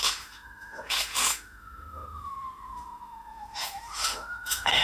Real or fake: fake